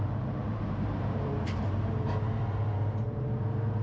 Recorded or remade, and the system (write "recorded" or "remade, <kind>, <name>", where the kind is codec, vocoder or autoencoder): remade, vocoder, BigVGAN v2